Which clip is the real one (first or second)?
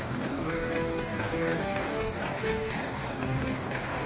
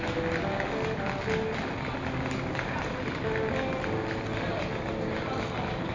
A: second